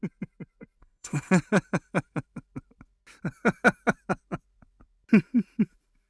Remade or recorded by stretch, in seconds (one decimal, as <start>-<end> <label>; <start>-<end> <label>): 0.0-0.8 recorded; 0.8-1.3 remade; 1.3-6.1 recorded